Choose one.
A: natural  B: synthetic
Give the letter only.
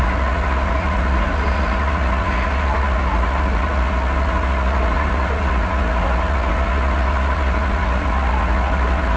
B